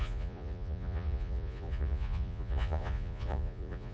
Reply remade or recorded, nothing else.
remade